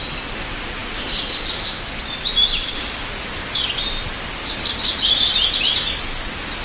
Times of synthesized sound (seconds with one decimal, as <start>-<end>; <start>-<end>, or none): none